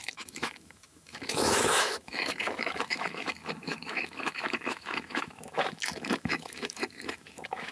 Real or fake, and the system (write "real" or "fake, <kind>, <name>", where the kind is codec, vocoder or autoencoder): fake, autoencoder, DAC-VAE